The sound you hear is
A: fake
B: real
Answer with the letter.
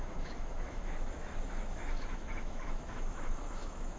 A